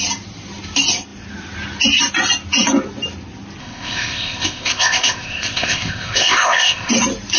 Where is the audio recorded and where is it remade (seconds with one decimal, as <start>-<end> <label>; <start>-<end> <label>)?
0.0-3.6 recorded; 3.6-6.9 remade; 6.9-7.4 recorded